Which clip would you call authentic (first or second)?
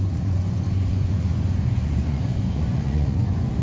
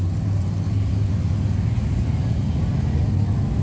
second